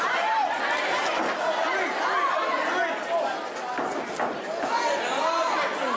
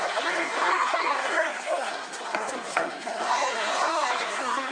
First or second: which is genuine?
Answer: first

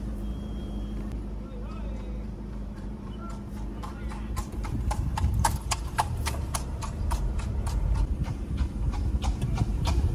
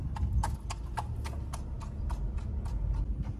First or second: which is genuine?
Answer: second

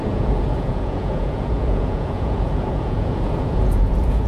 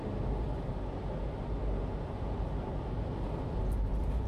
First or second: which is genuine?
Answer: second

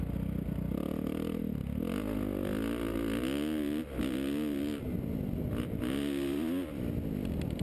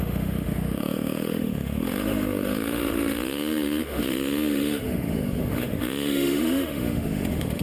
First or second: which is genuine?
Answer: first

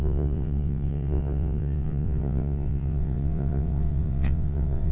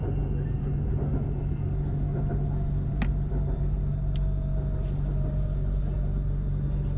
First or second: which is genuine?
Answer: second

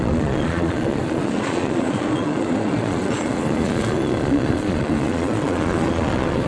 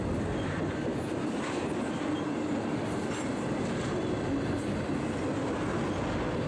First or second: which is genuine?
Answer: second